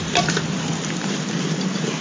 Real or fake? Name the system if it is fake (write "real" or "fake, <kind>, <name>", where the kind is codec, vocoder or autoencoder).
real